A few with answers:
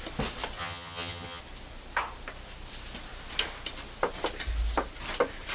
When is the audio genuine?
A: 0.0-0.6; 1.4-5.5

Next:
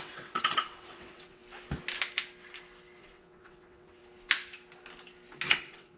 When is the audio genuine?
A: 1.4-3.0; 4.0-5.5

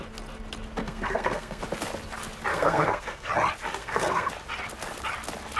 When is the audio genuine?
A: 0.0-0.8; 1.6-2.5; 3.3-3.8; 4.3-5.6

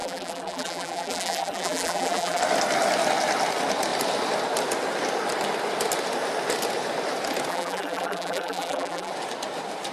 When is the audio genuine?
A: 2.4-7.5; 9.1-9.9

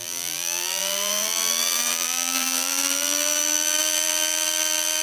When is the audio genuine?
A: none